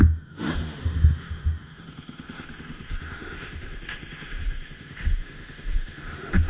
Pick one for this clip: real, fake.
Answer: fake